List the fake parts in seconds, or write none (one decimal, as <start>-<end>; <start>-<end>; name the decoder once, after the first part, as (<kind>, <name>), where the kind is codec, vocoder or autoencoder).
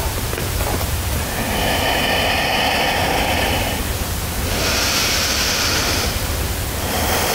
0.0-7.3 (vocoder, BigVGAN v2)